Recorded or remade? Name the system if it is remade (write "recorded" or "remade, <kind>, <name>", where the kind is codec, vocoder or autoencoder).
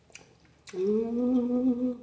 recorded